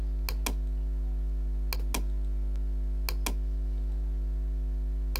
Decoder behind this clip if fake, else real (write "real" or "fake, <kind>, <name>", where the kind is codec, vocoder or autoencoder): real